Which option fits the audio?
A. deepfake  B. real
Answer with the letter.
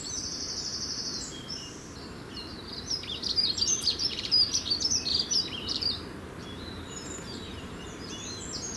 A